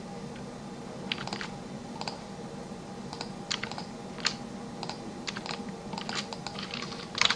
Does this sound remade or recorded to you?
recorded